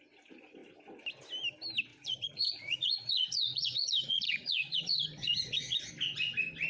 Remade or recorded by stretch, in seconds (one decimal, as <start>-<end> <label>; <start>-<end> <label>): 0.0-1.9 recorded; 1.9-5.9 remade; 5.9-6.7 recorded